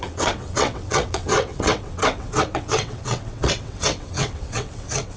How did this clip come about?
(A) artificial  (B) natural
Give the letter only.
A